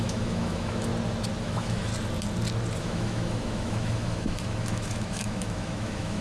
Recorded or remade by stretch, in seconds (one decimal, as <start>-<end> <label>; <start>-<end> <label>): 0.0-0.9 remade; 0.9-1.4 recorded; 1.4-1.9 remade; 1.9-2.8 recorded; 2.8-6.2 remade